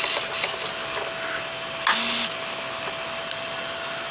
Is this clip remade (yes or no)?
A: no